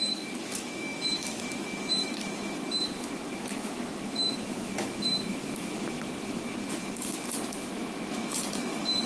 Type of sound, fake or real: fake